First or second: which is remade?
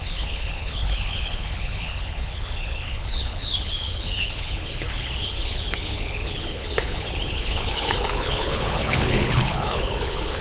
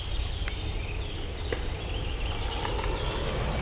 first